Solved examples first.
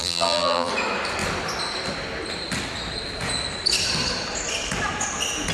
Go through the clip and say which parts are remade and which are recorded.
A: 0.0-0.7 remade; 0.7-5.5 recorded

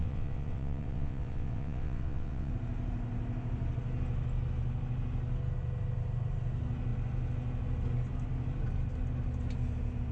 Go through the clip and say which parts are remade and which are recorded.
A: 0.0-2.5 remade; 2.5-10.1 recorded

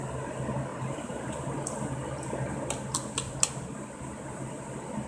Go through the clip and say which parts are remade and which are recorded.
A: 0.0-0.7 recorded; 0.7-1.3 remade; 1.3-5.1 recorded

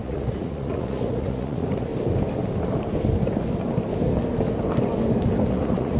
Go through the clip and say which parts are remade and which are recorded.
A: 0.0-1.9 remade; 1.9-5.5 recorded; 5.5-6.0 remade

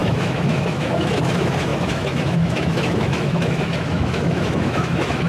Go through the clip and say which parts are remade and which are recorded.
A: 0.0-5.3 remade

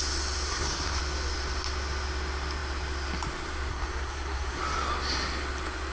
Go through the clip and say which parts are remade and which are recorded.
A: 0.0-0.5 recorded; 0.5-1.0 remade; 1.0-3.7 recorded; 3.7-4.6 remade; 4.6-5.9 recorded